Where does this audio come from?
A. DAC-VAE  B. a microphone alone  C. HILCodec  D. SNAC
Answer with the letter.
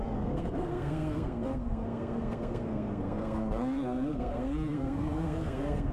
D